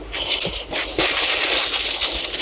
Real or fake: real